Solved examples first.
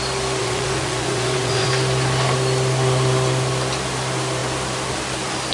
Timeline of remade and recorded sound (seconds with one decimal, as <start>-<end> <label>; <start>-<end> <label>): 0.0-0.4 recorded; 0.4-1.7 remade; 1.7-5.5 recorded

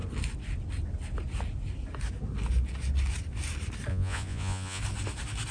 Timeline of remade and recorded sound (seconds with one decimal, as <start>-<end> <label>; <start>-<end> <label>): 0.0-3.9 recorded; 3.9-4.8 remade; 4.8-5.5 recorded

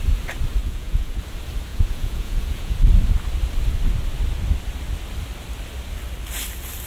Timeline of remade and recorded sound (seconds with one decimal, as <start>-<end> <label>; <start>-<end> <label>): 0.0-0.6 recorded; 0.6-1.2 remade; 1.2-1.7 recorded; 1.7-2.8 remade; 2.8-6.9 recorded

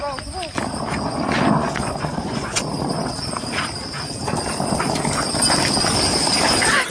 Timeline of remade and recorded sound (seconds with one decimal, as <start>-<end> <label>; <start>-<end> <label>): 0.0-0.9 recorded; 0.9-2.6 remade; 2.6-6.9 recorded

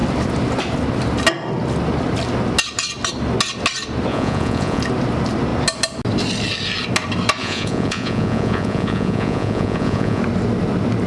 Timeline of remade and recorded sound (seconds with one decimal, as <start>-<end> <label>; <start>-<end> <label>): 0.0-4.1 recorded; 4.1-4.8 remade; 4.8-7.4 recorded; 7.4-10.2 remade; 10.2-11.1 recorded